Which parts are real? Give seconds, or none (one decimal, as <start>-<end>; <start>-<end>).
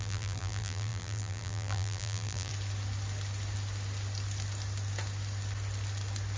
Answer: 2.5-6.4